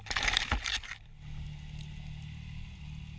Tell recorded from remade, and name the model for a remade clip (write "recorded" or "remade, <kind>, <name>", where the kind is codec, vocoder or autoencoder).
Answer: recorded